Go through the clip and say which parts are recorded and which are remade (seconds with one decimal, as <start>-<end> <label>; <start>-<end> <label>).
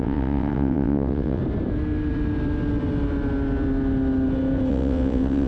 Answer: 0.0-1.4 remade; 1.4-4.7 recorded; 4.7-5.5 remade